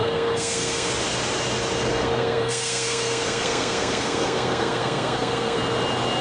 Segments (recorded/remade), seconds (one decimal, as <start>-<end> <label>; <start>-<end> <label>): 0.0-0.9 remade; 0.9-1.9 recorded; 1.9-5.6 remade; 5.6-6.2 recorded